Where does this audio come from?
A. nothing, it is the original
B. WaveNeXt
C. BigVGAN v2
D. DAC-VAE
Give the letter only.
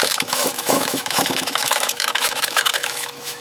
D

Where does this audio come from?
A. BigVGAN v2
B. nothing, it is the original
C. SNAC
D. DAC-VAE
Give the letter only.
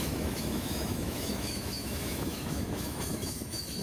D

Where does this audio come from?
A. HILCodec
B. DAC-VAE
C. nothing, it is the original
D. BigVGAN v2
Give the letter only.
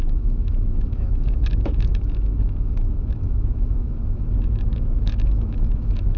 B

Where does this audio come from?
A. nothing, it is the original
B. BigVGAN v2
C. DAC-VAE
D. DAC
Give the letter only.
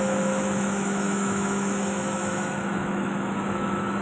C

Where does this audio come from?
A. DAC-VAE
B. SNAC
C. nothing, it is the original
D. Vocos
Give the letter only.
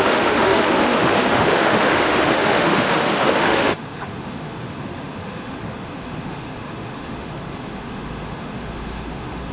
A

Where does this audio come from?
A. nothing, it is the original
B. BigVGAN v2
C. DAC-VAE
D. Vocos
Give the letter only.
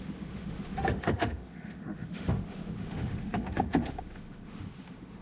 C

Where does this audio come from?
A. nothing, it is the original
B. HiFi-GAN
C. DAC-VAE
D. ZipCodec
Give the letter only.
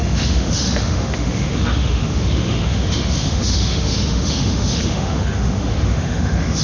C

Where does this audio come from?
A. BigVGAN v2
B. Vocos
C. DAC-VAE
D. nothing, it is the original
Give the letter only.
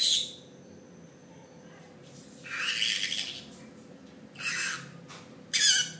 D